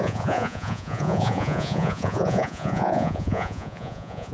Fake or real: fake